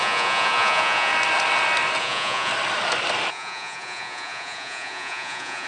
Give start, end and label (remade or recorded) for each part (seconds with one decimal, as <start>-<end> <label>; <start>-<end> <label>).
0.0-1.1 remade; 1.1-2.0 recorded; 2.0-2.5 remade; 2.5-3.3 recorded; 3.3-5.7 remade